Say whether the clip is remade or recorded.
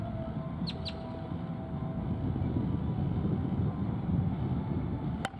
recorded